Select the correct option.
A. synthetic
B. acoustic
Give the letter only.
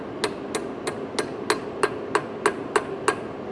B